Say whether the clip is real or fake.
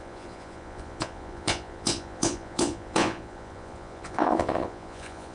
fake